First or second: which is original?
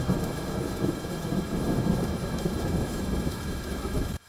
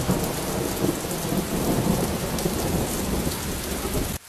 second